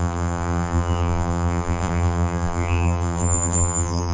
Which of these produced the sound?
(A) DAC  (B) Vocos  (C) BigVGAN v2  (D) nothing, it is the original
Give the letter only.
C